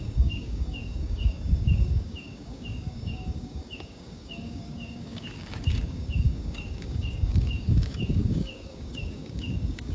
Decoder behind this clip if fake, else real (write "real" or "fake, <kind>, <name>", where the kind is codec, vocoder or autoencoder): fake, codec, DAC